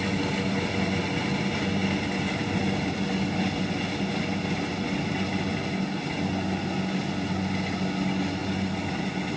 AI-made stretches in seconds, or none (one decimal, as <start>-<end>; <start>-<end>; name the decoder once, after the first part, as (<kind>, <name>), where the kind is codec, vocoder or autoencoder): none

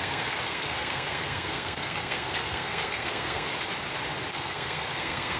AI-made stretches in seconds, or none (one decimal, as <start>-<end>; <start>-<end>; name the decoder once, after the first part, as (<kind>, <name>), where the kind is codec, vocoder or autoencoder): 0.0-3.5 (codec, SNAC); 4.3-5.4

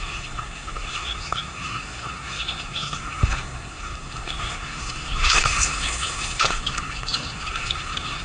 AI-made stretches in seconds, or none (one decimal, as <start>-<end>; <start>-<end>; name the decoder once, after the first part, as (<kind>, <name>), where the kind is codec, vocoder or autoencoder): 0.0-8.2 (codec, SNAC)